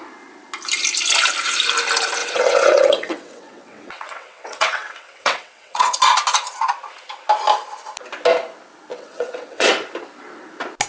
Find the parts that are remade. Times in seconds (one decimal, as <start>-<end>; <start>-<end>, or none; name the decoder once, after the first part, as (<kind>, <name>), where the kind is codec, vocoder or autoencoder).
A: 2.2-6.0 (vocoder, WaveNeXt); 8.9-9.7